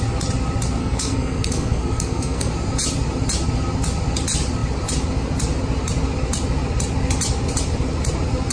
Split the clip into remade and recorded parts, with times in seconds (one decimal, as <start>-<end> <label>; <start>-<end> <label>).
0.0-0.8 recorded; 0.8-2.5 remade; 2.5-8.5 recorded